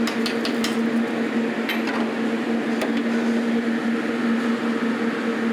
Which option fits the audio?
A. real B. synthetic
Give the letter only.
A